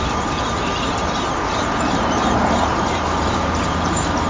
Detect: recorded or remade remade